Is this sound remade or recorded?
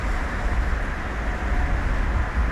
recorded